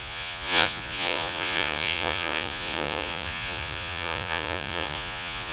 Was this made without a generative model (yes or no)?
no